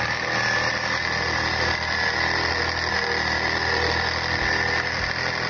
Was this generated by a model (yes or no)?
no